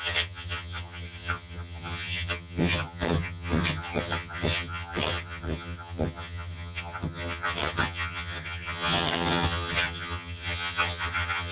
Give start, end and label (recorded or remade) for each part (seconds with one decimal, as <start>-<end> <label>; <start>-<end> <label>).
0.0-11.5 remade